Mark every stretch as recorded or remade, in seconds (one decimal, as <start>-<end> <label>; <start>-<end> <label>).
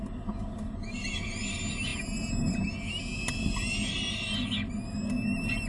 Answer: 0.0-5.7 recorded